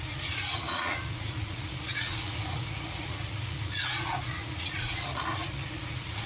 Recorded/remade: remade